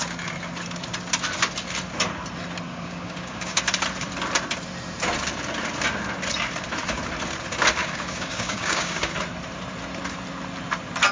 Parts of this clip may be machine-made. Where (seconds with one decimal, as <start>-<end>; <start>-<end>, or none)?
2.7-3.6; 7.8-9.1